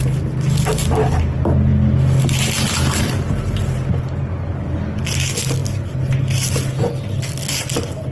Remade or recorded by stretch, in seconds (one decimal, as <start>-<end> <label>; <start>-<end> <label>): 0.0-8.1 recorded